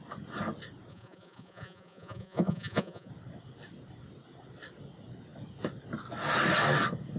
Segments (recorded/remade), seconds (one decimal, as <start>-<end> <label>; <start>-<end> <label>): 0.0-0.9 recorded; 0.9-3.1 remade; 3.1-7.2 recorded

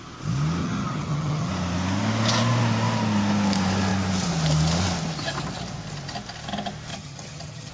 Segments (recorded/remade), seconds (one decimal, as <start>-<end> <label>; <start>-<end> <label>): 0.0-0.6 recorded; 0.6-1.5 remade; 1.5-6.9 recorded; 6.9-7.7 remade

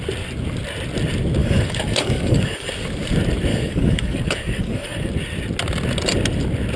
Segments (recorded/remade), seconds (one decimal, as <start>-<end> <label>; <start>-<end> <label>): 0.0-1.4 recorded; 1.4-2.7 remade; 2.7-3.5 recorded; 3.5-5.1 remade; 5.1-6.8 recorded

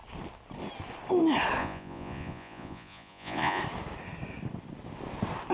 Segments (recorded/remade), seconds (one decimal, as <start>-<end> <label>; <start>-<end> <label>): 0.0-1.6 recorded; 1.6-3.6 remade; 3.6-5.5 recorded